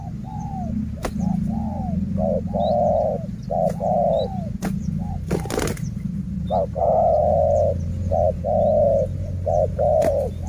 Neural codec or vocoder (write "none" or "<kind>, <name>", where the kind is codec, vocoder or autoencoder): none